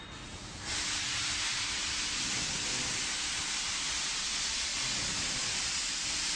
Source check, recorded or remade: recorded